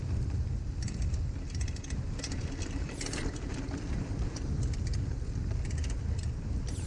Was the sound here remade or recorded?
recorded